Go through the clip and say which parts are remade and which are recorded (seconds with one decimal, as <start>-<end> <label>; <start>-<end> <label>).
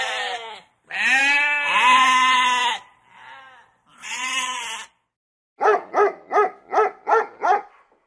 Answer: 0.0-3.9 recorded; 3.9-4.6 remade; 4.6-8.1 recorded